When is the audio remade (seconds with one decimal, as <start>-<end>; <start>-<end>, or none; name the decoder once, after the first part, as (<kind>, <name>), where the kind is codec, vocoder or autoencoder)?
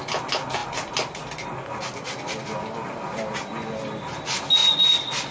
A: none